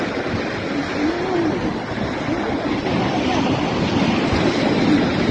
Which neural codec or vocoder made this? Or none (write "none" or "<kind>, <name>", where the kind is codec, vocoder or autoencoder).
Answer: none